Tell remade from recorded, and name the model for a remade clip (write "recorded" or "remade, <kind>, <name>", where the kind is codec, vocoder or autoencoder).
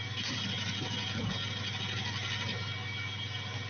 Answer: recorded